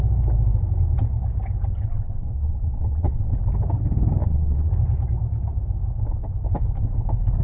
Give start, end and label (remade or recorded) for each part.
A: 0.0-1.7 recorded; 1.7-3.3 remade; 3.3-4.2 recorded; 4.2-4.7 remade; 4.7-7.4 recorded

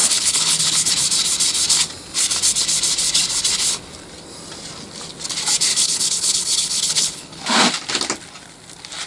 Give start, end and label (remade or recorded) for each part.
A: 0.0-0.9 remade; 0.9-5.7 recorded; 5.7-7.4 remade; 7.4-9.1 recorded

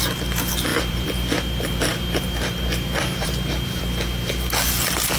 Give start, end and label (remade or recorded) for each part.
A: 0.0-0.7 recorded; 0.7-3.8 remade; 3.8-5.2 recorded